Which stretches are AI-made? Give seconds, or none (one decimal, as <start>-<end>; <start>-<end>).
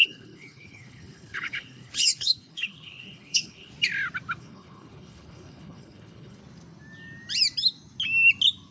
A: 0.0-3.7; 4.4-6.4